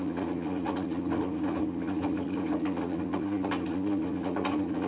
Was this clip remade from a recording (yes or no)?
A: yes